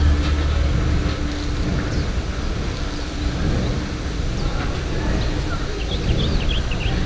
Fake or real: real